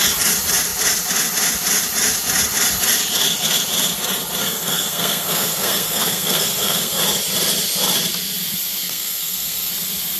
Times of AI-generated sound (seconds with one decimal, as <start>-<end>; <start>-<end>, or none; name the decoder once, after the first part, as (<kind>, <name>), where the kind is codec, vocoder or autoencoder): 4.4-7.0 (codec, SNAC); 8.8-9.7